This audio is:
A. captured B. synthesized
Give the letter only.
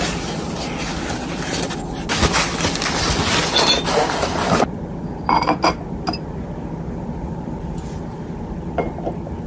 A